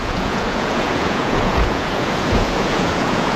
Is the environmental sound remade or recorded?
remade